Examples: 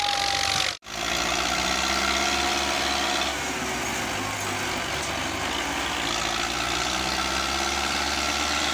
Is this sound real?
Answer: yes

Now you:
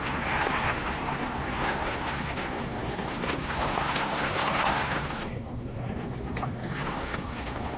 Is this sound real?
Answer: no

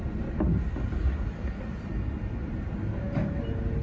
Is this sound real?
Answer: yes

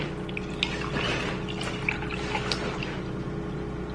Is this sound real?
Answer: yes